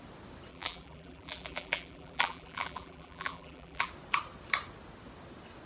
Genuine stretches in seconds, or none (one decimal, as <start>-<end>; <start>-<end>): 0.0-0.5; 3.9-5.7